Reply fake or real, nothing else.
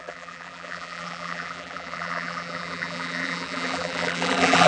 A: fake